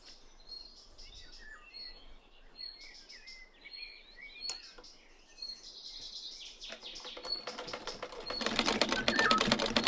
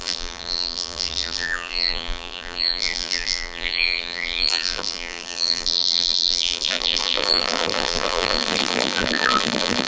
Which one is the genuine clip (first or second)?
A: first